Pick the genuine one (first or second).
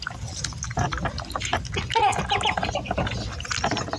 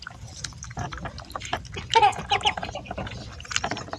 first